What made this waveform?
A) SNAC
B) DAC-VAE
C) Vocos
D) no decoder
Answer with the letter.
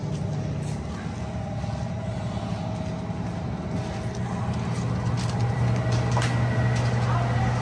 D